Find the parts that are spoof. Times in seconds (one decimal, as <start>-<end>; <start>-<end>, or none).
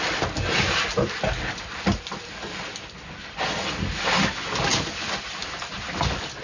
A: none